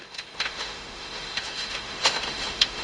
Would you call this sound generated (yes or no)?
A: yes